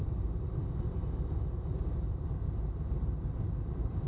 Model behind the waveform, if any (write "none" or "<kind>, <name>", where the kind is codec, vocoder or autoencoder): none